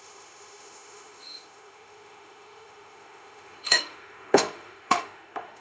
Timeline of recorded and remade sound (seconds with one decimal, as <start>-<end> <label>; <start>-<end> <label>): 0.0-5.6 remade